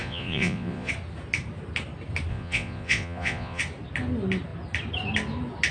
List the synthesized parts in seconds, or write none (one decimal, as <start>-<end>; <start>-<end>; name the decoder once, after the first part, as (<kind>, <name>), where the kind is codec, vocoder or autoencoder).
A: 0.0-0.9 (vocoder, Vocos); 2.3-3.6